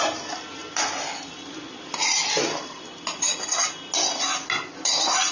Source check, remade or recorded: recorded